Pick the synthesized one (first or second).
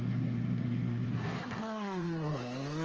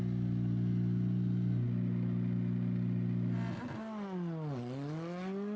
first